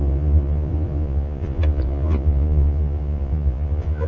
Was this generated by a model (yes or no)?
yes